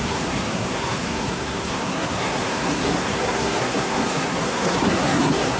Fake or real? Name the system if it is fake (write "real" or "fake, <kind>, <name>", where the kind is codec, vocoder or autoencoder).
fake, codec, SNAC